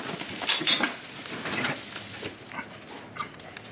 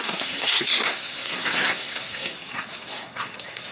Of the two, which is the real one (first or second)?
first